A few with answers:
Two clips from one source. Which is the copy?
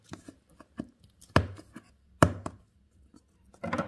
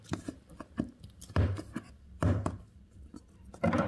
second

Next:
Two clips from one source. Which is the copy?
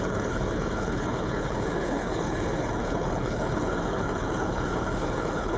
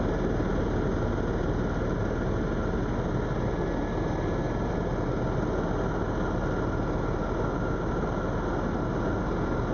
first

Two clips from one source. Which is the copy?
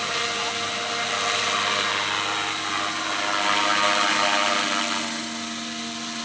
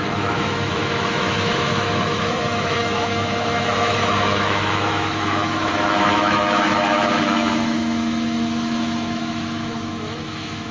second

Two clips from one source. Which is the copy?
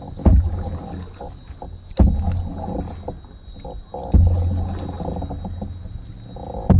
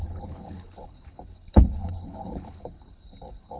second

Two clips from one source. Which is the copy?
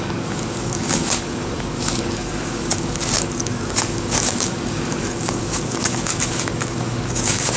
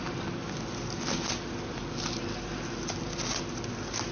first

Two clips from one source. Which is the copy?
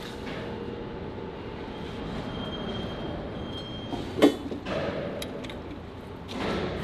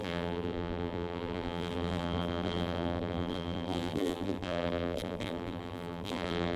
second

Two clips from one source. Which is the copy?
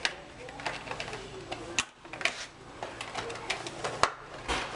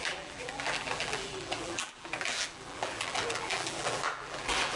second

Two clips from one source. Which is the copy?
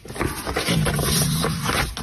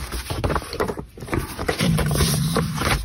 second